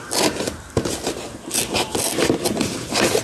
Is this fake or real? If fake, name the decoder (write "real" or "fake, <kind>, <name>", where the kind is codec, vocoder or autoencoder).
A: real